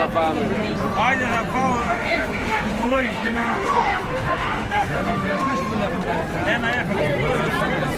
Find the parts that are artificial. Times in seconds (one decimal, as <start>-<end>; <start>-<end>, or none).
1.8-5.5